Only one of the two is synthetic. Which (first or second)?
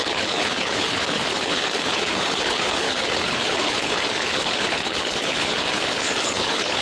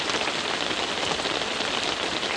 first